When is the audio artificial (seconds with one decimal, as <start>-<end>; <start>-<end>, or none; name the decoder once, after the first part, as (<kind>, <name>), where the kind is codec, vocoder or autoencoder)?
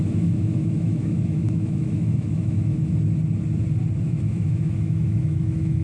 0.0-2.8 (autoencoder, DAC-VAE); 4.0-5.8